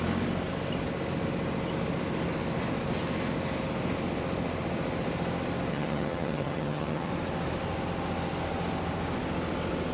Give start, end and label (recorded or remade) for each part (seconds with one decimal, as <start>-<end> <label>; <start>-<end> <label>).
0.0-5.7 recorded; 5.7-7.1 remade; 7.1-9.9 recorded